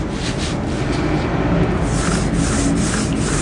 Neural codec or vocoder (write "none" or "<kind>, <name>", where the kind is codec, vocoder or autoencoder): none